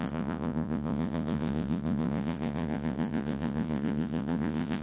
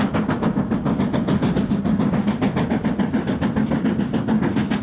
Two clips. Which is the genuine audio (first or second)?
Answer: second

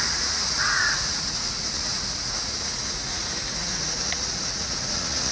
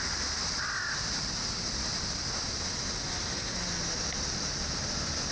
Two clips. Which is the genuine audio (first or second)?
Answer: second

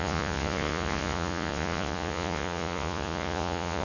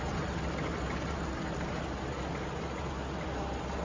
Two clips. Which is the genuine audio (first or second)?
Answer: second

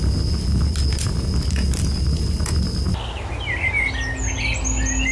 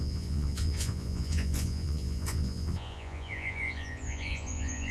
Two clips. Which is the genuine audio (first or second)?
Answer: first